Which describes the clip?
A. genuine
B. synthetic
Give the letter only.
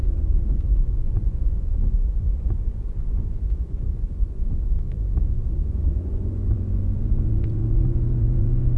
B